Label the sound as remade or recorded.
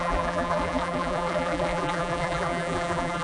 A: remade